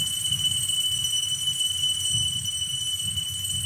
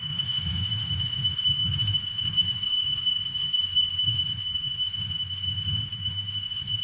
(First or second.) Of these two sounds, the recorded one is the first